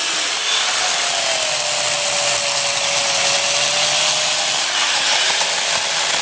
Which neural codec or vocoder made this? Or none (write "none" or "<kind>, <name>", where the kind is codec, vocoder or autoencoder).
none